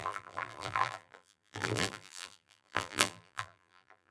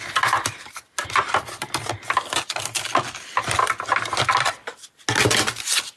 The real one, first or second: second